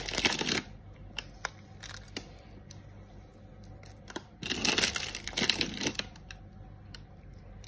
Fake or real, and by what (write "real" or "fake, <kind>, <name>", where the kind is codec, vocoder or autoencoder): real